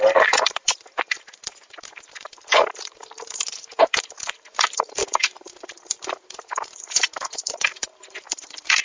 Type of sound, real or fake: fake